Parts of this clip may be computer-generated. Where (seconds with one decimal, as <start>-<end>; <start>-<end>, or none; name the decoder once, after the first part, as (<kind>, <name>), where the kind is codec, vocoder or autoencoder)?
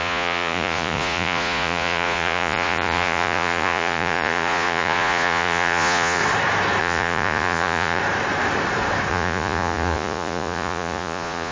0.0-6.2 (vocoder, Vocos); 6.8-8.0; 9.1-11.5